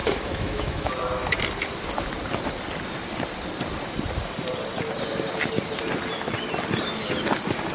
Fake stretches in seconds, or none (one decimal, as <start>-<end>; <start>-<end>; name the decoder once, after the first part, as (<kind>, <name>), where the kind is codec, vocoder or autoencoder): 0.0-0.9 (autoencoder, DAC-VAE)